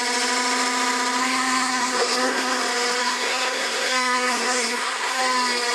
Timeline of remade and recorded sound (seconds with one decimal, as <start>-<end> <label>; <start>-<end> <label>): 0.0-1.2 recorded; 1.2-2.6 remade; 2.6-3.0 recorded; 3.0-5.2 remade; 5.2-5.7 recorded